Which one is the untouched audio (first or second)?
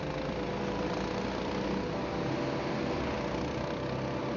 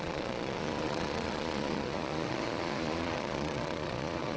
first